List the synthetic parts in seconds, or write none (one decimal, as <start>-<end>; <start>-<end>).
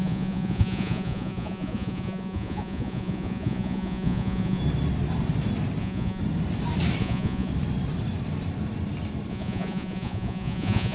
0.0-4.6; 5.8-6.2; 7.0-7.5; 9.3-10.9